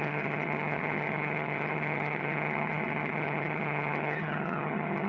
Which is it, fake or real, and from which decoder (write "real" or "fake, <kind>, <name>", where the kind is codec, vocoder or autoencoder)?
fake, vocoder, HiFi-GAN